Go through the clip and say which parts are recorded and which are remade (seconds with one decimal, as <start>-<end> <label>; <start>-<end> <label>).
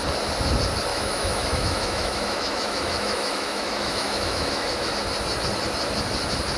0.0-0.9 recorded; 0.9-4.9 remade; 4.9-6.6 recorded